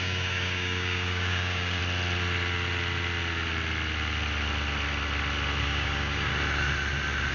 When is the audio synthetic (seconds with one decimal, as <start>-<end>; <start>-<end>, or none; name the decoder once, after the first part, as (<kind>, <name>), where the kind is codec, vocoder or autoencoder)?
0.0-1.8 (codec, DAC); 5.6-6.3